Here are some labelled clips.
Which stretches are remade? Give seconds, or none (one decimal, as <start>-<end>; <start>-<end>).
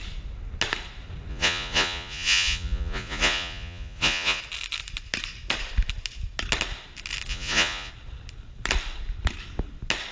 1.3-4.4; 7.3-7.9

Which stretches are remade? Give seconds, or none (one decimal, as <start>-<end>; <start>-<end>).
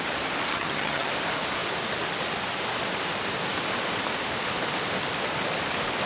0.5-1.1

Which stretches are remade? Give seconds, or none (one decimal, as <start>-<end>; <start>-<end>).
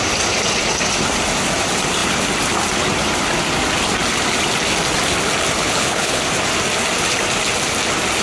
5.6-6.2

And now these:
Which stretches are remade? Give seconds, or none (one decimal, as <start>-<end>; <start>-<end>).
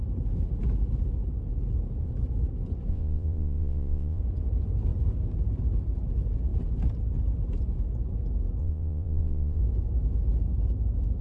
2.9-4.2; 8.6-9.6